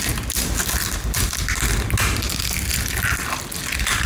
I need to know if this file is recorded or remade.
recorded